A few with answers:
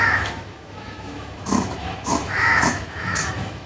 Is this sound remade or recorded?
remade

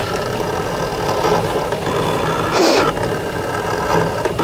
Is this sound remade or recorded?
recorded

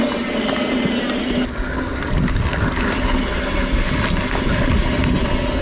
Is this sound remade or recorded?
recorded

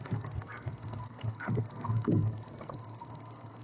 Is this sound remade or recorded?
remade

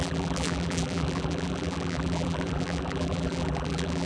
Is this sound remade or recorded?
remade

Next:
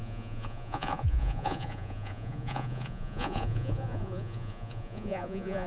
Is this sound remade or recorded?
remade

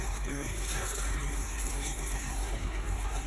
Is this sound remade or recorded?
remade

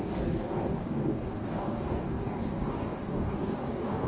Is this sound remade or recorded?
remade